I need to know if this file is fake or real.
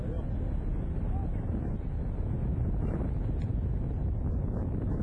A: real